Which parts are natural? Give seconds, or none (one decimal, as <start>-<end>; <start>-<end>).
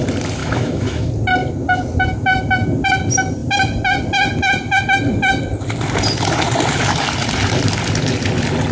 0.0-0.4; 1.1-8.7